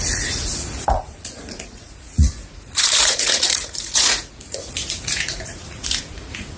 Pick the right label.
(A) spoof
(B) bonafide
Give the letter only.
A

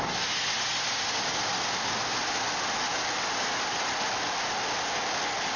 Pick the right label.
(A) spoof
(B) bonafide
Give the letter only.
B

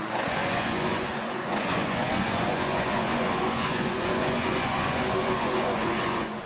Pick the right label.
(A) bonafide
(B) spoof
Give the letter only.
B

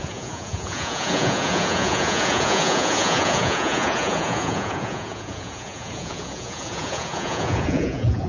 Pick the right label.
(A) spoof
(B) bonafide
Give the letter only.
A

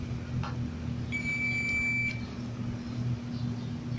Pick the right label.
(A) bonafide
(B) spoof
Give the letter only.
A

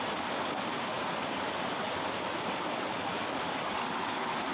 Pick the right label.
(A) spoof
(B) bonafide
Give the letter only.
B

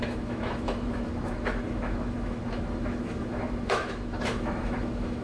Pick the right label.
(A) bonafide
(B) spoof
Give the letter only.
B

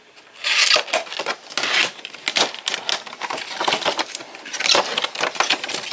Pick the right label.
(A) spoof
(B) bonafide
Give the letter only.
B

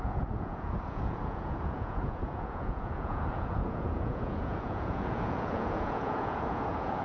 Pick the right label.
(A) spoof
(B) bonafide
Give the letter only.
A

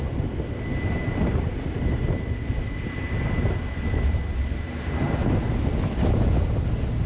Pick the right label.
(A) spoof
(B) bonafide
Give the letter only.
B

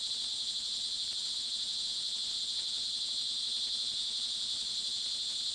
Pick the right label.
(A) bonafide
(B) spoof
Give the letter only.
A